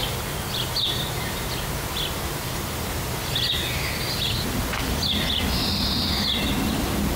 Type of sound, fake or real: real